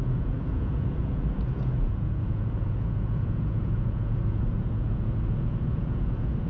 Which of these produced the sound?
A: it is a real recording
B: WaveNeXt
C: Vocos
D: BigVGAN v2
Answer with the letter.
C